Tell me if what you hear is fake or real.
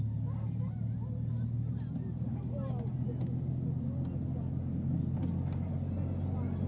real